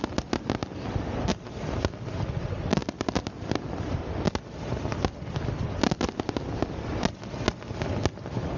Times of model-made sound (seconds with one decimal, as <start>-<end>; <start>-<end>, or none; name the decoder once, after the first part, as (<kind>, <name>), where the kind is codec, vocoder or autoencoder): 0.6-1.3 (vocoder, BigVGAN v2); 2.8-4.4